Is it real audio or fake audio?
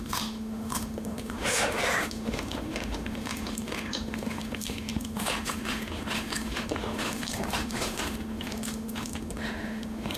fake